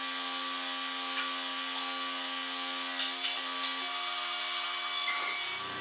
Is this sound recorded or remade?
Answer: recorded